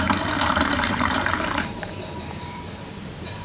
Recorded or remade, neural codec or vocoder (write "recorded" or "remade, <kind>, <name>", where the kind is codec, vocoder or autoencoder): remade, vocoder, BigVGAN v2